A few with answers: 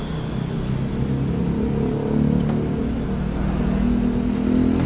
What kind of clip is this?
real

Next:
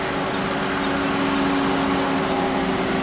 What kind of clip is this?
real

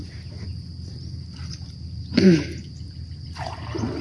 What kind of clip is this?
real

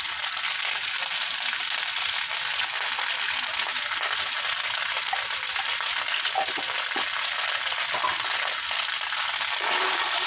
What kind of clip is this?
real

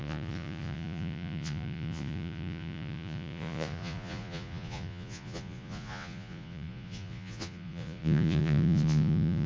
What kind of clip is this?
fake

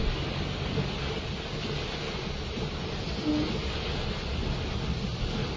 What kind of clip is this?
real